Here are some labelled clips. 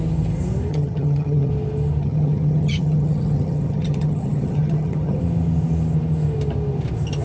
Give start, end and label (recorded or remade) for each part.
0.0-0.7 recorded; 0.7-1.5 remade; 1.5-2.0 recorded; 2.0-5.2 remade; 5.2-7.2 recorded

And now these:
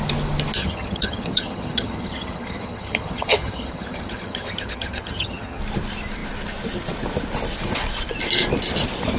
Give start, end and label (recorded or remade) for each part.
0.0-0.6 recorded; 0.6-5.6 remade; 5.6-9.2 recorded

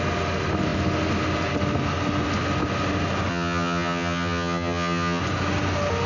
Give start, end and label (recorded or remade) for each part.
0.0-3.3 recorded; 3.3-5.2 remade; 5.2-6.1 recorded